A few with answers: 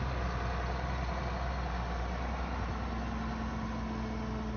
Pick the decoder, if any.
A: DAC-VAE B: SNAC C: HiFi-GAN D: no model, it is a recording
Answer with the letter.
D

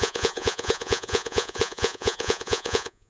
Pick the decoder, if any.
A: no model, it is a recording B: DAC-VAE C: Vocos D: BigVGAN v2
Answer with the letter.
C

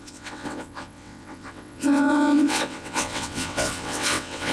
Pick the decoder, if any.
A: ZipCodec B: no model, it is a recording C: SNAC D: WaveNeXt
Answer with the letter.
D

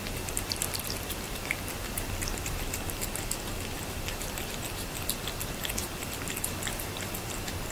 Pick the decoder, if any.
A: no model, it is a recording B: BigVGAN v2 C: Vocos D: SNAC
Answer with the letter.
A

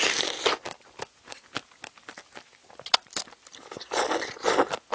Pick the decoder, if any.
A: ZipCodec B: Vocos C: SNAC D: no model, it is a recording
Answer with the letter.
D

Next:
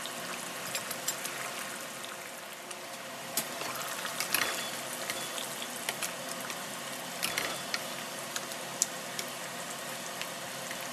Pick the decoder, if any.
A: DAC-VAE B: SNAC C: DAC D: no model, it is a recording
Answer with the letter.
D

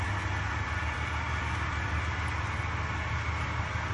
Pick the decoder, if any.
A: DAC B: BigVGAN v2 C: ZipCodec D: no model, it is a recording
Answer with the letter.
D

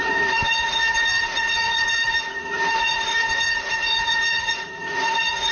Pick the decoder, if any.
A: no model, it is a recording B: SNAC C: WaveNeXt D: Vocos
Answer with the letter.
D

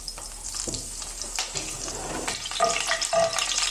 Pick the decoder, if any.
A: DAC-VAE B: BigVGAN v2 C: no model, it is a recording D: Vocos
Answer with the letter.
C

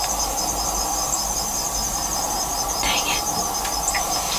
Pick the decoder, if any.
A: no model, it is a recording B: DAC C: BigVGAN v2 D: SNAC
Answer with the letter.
A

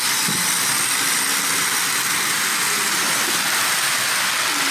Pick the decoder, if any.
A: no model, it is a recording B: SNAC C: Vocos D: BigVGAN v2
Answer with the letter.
A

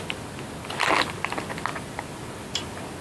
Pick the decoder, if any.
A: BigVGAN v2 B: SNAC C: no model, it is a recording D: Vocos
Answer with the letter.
C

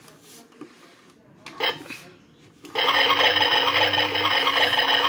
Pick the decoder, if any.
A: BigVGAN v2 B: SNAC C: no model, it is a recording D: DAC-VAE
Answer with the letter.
C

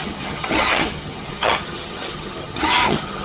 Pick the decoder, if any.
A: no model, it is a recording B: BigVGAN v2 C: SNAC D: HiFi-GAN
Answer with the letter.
D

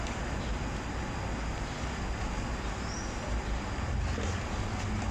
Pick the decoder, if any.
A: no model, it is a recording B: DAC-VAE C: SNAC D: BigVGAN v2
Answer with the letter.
A